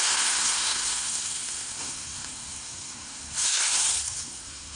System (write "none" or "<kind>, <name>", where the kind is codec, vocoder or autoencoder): codec, SNAC